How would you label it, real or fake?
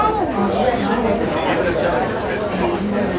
real